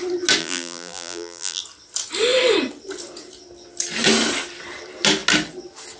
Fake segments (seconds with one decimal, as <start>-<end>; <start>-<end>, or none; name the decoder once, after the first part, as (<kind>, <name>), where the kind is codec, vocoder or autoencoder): 0.4-1.6 (vocoder, BigVGAN v2)